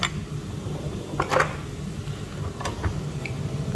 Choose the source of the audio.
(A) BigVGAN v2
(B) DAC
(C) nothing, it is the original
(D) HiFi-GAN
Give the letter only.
C